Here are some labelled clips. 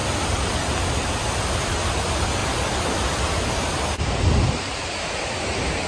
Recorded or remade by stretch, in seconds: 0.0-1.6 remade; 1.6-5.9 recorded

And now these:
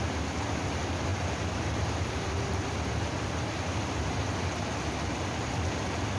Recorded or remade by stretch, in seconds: 0.0-1.1 recorded; 1.1-4.5 remade; 4.5-6.2 recorded